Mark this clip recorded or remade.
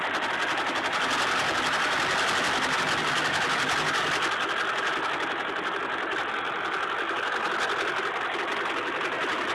recorded